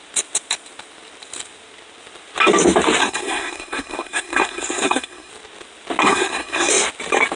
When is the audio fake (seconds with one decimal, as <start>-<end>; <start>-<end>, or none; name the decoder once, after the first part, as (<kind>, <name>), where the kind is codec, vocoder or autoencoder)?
3.0-5.3 (codec, SNAC); 6.0-6.7

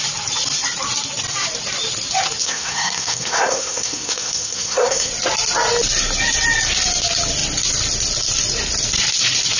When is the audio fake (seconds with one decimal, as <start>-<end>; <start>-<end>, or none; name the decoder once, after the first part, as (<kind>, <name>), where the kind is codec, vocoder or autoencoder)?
2.4-5.1 (codec, SNAC)

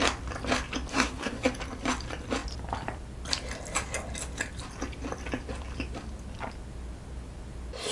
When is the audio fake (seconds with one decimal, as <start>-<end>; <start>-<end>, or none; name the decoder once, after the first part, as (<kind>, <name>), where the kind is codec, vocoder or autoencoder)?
0.9-1.4 (codec, SNAC)